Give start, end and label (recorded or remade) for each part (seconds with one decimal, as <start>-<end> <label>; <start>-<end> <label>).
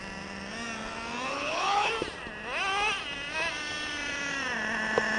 0.0-1.3 recorded; 1.3-1.9 remade; 1.9-5.2 recorded